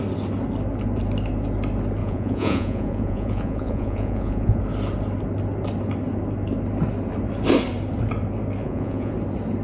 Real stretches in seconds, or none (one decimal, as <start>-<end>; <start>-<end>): 0.0-2.0; 4.6-8.6; 9.1-9.6